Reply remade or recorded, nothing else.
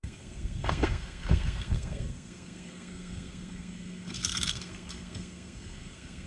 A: remade